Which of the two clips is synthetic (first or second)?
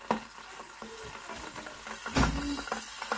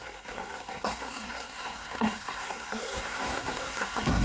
second